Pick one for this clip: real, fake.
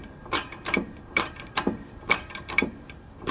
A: fake